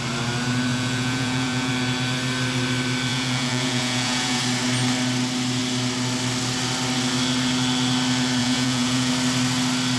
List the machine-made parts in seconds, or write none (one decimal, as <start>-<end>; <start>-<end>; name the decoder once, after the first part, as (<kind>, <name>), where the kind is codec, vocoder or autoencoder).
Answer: 0.7-1.7 (vocoder, Vocos); 3.1-4.4; 8.4-9.1